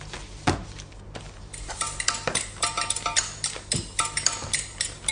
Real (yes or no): yes